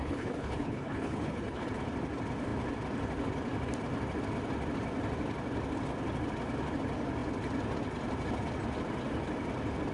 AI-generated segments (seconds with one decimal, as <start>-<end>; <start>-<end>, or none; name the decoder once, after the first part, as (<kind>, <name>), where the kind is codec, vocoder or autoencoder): 0.0-1.7 (codec, HILCodec)